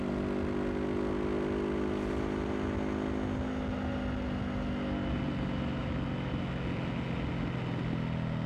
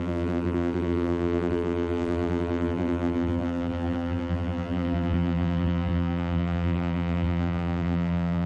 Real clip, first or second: first